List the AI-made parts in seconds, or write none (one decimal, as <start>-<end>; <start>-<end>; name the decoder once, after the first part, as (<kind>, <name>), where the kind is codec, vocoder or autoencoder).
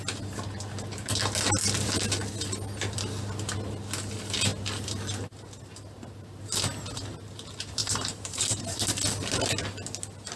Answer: 7.8-8.6 (vocoder, BigVGAN v2)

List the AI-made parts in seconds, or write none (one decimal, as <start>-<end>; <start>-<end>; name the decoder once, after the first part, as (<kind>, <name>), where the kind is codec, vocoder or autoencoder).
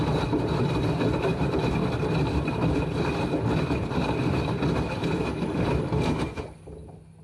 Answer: 1.4-1.8 (vocoder, BigVGAN v2); 3.6-5.3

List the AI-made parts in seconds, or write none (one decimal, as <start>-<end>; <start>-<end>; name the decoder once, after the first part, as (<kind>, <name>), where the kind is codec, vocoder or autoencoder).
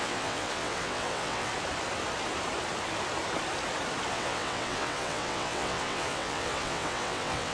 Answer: 0.0-1.5 (vocoder, WaveNeXt); 4.1-7.5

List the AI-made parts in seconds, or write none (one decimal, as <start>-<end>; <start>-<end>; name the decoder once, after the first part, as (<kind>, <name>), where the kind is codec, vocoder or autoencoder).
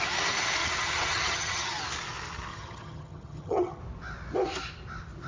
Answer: 0.6-1.8 (vocoder, HiFi-GAN); 2.5-3.8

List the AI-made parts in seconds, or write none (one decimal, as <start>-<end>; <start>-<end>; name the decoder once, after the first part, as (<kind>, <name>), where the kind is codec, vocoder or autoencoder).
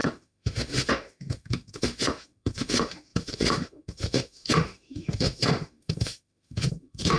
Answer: 0.0-7.2 (autoencoder, DAC-VAE)